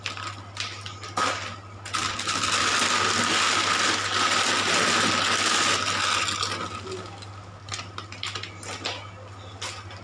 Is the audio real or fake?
real